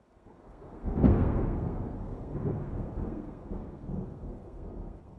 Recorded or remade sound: remade